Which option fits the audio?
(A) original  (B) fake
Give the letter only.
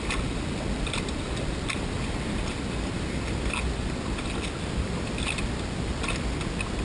A